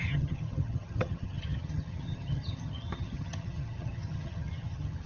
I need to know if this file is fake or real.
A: fake